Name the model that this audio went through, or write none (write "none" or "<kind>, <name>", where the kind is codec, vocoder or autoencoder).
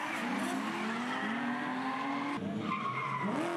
none